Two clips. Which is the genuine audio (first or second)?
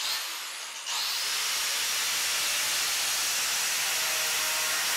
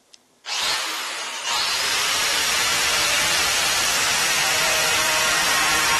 first